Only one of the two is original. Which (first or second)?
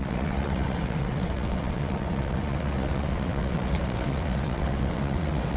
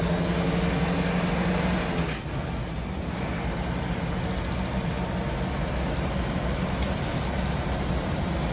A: second